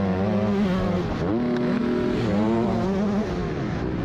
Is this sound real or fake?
real